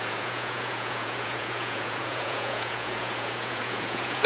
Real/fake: fake